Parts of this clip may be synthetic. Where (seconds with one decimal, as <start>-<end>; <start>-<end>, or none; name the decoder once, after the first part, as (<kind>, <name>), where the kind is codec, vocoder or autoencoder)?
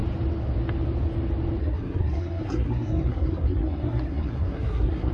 1.6-5.1 (codec, SNAC)